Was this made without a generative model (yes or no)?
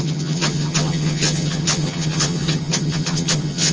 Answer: no